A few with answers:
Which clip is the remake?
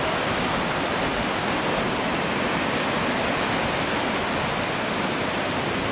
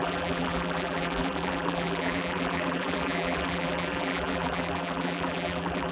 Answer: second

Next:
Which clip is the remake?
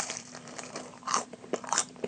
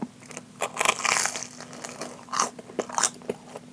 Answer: first